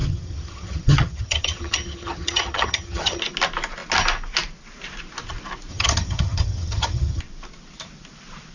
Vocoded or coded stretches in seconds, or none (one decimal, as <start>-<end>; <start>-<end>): 0.0-3.2; 5.7-7.2

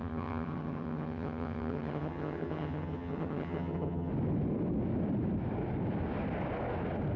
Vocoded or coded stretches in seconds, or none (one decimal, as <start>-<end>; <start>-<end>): 0.0-4.1